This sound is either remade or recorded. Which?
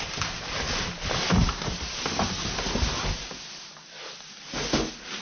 recorded